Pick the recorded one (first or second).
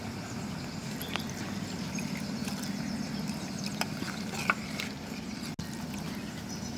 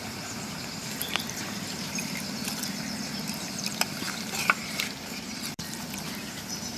first